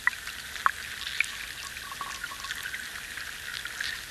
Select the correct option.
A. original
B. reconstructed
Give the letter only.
A